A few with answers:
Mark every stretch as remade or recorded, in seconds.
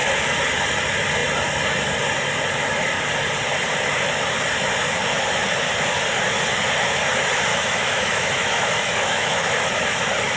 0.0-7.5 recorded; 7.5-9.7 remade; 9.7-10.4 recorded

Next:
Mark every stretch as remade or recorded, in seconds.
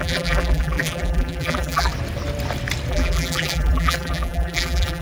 0.0-1.9 remade; 1.9-2.9 recorded; 2.9-5.0 remade